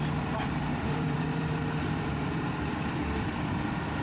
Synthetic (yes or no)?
yes